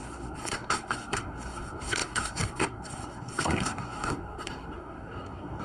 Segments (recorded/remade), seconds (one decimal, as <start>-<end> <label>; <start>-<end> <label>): 0.0-5.6 remade